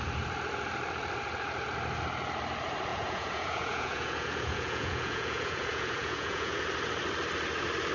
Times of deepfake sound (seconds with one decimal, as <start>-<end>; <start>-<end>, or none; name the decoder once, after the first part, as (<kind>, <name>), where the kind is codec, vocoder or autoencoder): 2.9-6.6 (vocoder, Vocos)